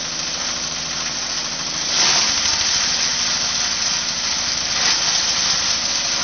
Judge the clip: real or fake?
real